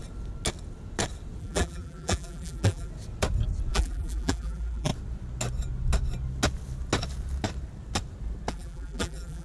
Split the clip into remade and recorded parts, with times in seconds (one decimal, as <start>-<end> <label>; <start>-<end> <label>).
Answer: 0.0-1.4 recorded; 1.4-2.9 remade; 2.9-3.7 recorded; 3.7-4.9 remade; 4.9-8.5 recorded; 8.5-9.4 remade